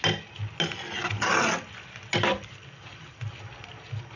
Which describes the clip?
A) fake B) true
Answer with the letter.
B